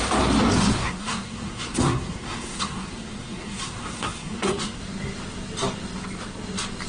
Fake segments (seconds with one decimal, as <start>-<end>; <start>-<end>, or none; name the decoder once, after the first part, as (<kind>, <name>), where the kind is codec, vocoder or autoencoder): 0.8-4.8 (codec, SNAC)